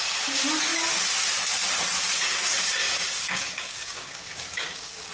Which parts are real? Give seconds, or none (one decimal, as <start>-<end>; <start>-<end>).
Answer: 0.0-2.8